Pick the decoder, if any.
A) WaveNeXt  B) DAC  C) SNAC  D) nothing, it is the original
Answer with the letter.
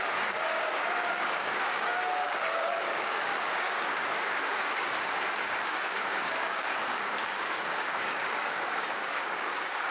B